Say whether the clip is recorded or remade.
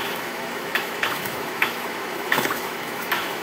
remade